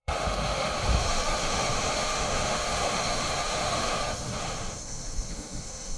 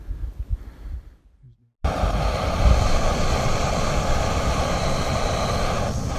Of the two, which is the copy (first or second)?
first